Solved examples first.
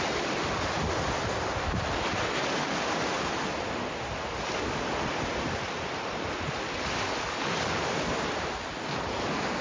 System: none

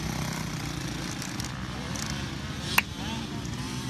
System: none